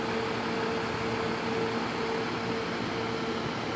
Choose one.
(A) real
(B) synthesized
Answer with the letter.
A